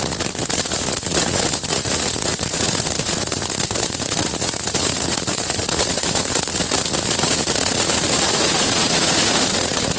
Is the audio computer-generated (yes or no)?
yes